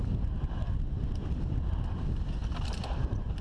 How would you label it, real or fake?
real